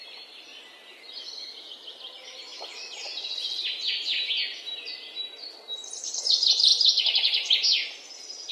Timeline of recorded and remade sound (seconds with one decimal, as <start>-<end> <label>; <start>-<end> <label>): 0.0-0.5 remade; 0.5-1.7 recorded; 1.7-2.5 remade; 2.5-5.9 recorded; 5.9-6.7 remade; 6.7-8.5 recorded